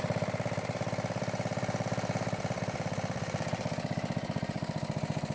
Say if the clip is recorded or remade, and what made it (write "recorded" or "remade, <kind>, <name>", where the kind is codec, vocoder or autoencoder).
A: remade, vocoder, BigVGAN v2